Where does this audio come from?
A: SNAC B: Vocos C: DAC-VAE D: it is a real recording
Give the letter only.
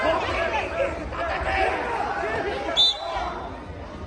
D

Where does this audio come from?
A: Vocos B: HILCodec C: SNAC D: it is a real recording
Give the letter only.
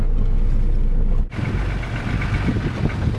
D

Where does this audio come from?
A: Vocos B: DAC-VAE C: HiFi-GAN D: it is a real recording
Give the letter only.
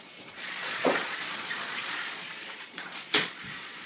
A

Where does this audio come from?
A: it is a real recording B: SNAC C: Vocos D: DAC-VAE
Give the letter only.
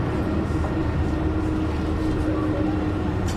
A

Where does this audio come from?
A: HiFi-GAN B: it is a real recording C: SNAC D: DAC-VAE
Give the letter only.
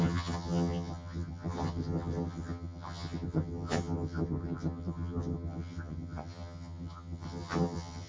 A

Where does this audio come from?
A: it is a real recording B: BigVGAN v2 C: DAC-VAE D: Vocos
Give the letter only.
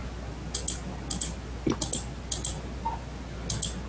A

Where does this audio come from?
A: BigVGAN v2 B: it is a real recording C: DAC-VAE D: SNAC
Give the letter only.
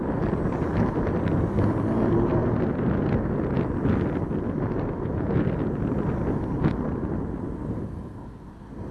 B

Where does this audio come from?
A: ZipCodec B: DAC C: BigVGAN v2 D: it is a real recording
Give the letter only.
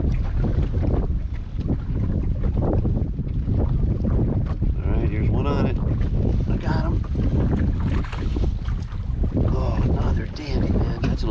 D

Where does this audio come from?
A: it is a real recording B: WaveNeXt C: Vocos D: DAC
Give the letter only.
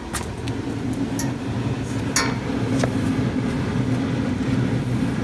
A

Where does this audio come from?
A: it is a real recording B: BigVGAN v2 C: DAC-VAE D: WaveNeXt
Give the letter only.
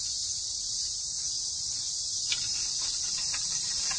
A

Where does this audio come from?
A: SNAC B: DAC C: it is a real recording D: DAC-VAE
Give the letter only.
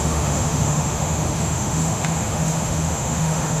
D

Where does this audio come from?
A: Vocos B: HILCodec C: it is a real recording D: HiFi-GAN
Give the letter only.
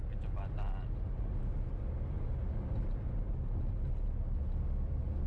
C